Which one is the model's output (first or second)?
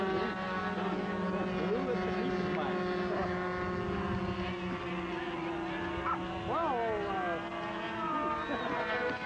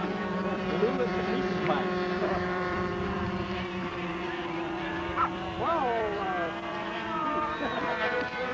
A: second